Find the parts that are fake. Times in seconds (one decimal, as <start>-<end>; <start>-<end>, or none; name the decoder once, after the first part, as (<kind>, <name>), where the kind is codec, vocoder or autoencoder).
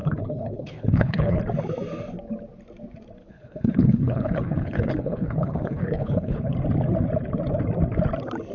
0.0-1.4 (codec, HILCodec); 3.2-6.5